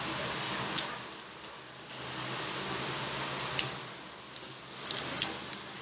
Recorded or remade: recorded